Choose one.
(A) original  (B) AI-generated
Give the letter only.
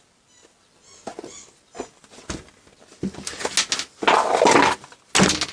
A